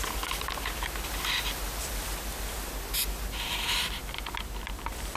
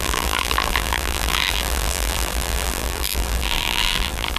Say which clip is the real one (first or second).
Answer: first